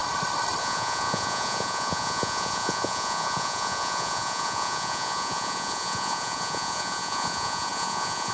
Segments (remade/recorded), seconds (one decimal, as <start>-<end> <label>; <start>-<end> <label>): 0.0-0.6 recorded; 0.6-8.3 remade

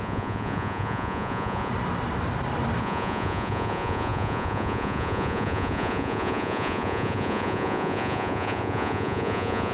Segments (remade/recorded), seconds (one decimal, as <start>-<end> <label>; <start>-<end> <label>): 0.0-1.7 remade; 1.7-2.8 recorded; 2.8-9.7 remade

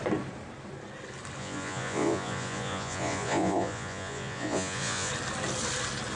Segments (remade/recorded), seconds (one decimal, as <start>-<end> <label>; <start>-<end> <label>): 0.0-1.4 recorded; 1.4-5.1 remade; 5.1-6.2 recorded